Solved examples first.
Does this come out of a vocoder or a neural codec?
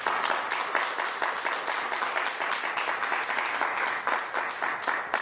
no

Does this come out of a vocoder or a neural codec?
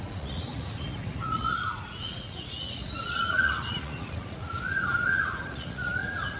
yes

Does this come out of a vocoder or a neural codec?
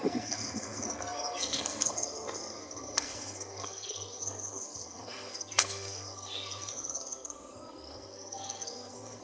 yes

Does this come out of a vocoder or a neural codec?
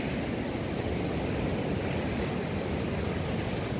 no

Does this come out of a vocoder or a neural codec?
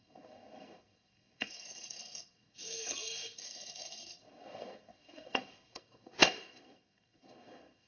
yes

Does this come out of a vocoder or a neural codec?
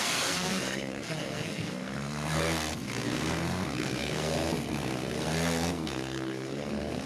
yes